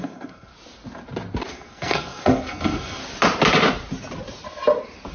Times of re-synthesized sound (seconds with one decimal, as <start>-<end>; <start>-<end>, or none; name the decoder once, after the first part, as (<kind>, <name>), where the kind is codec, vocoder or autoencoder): 0.0-0.5 (codec, SNAC); 1.5-3.0